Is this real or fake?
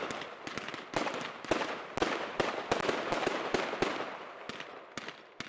real